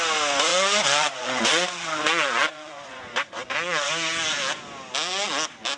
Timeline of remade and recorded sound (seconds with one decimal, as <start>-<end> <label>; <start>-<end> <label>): 0.0-0.5 recorded; 0.5-3.9 remade; 3.9-5.8 recorded